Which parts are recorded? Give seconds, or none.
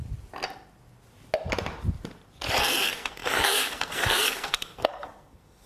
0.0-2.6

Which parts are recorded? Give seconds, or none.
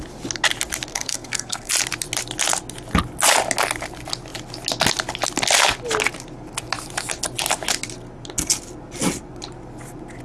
0.0-0.9; 1.7-10.2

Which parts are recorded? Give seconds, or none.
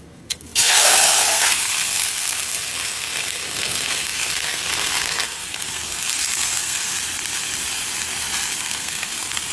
6.9-8.6